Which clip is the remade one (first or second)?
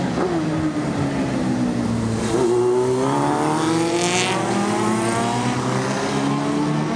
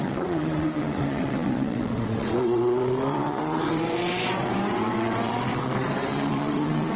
second